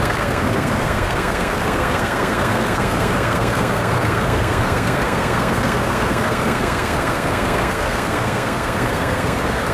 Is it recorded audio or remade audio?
remade